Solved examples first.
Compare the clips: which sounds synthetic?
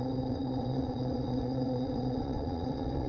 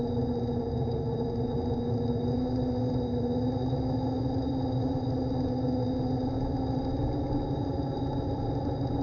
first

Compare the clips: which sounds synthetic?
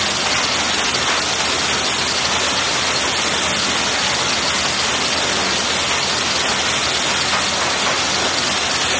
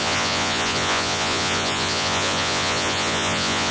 second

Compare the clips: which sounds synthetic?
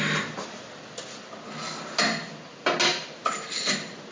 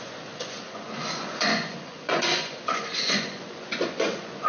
second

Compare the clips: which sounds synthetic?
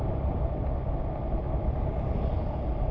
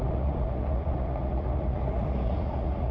second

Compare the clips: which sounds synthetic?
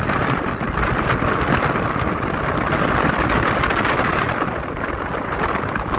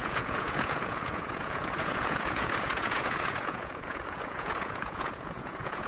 second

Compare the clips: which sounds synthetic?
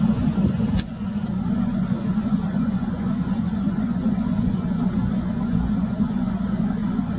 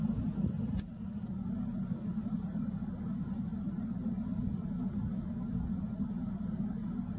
first